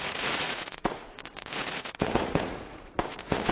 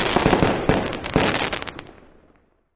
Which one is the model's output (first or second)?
first